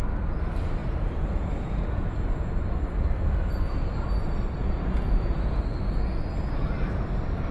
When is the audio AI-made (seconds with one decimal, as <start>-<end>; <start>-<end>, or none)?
0.8-2.2; 4.6-5.6